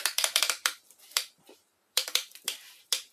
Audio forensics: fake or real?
fake